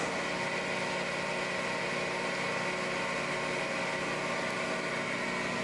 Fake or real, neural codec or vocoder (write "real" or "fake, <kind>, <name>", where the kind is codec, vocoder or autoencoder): real